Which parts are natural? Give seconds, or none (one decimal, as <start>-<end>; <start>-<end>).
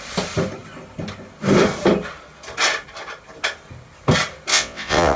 0.0-4.5